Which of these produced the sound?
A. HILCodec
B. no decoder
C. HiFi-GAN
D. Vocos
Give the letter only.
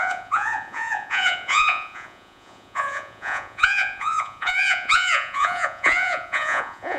D